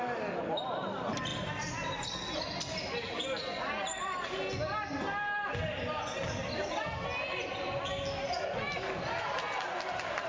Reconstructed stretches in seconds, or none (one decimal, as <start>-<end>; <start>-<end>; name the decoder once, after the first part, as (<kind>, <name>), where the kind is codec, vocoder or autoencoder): none